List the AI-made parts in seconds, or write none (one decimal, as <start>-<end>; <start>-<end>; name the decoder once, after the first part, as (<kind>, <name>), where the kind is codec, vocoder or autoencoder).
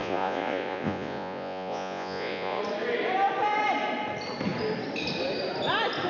0.0-2.6 (vocoder, Vocos)